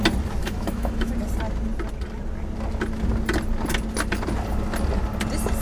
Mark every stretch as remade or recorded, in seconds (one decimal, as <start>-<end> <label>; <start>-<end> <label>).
0.0-0.4 recorded; 0.4-1.1 remade; 1.1-5.6 recorded